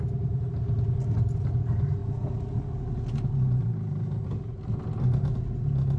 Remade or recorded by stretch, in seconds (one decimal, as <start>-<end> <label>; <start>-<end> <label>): 0.0-6.0 recorded